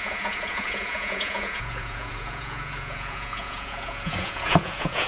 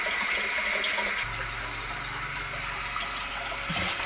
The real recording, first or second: second